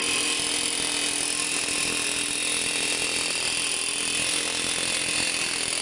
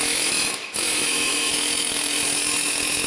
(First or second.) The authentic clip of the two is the first